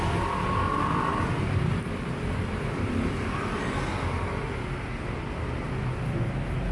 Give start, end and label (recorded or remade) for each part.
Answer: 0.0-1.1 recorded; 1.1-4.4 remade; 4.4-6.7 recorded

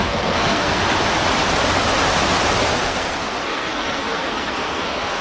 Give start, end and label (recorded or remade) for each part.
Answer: 0.0-0.8 remade; 0.8-2.8 recorded; 2.8-5.2 remade

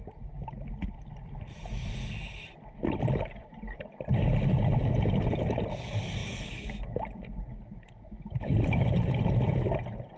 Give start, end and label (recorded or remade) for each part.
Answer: 0.0-10.2 recorded